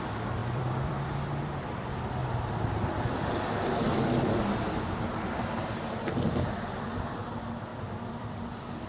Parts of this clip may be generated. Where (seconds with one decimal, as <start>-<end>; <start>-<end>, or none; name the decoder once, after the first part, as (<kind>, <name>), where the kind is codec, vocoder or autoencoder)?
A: 0.4-1.6 (vocoder, BigVGAN v2); 7.7-8.9